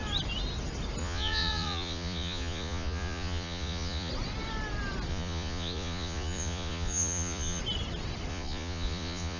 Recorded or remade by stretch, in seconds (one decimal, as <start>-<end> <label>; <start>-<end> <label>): 0.0-1.0 recorded; 1.0-4.1 remade; 4.1-5.1 recorded; 5.1-7.6 remade; 7.6-8.3 recorded; 8.3-9.4 remade